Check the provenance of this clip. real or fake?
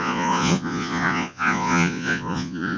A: fake